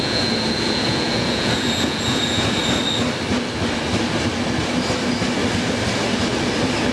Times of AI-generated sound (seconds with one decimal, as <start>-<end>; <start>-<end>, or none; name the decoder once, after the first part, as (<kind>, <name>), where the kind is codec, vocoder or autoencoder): 0.0-2.6 (vocoder, Vocos)